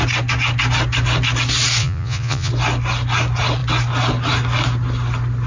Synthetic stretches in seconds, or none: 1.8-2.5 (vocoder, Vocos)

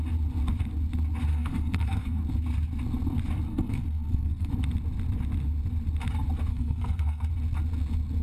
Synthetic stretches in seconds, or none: 1.3-2.2 (codec, SNAC); 3.5-4.5; 6.5-7.3